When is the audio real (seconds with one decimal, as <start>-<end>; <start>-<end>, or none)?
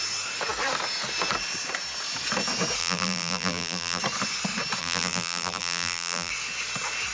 0.0-2.8; 4.0-4.8; 6.3-7.1